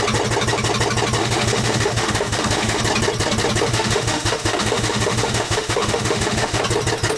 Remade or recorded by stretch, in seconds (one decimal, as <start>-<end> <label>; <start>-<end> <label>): 0.0-1.2 recorded; 1.2-2.8 remade; 2.8-3.7 recorded; 3.7-6.6 remade; 6.6-7.2 recorded